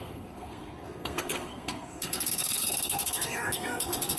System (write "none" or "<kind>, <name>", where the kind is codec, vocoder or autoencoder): codec, SNAC